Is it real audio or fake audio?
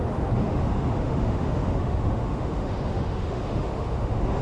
fake